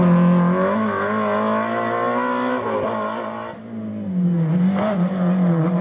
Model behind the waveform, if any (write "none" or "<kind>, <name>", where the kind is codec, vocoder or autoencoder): none